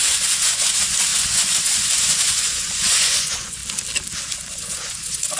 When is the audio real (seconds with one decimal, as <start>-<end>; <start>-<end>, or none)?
3.6-4.2